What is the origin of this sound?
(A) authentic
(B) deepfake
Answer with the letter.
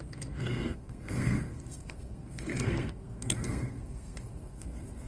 B